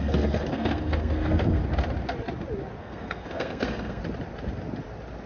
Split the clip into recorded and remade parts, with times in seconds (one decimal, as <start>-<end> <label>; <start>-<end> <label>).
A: 0.0-1.6 remade; 1.6-2.8 recorded; 2.8-4.0 remade; 4.0-5.3 recorded